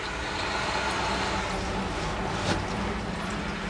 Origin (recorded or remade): recorded